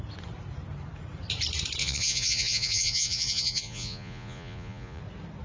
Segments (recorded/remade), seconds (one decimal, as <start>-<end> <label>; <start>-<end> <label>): 0.0-1.8 recorded; 1.8-5.0 remade; 5.0-5.4 recorded